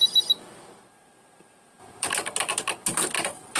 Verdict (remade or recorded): remade